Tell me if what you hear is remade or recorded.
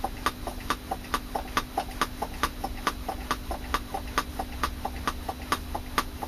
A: recorded